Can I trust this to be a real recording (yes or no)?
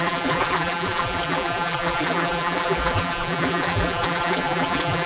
no